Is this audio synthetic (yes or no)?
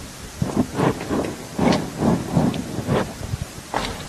no